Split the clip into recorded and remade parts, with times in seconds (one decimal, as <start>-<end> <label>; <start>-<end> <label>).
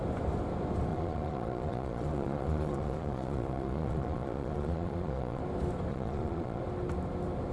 0.0-0.9 recorded; 0.9-5.4 remade; 5.4-5.9 recorded; 5.9-6.6 remade; 6.6-7.5 recorded